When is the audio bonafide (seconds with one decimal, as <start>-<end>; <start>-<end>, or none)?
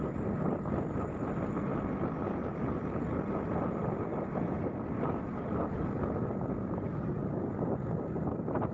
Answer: 0.0-8.7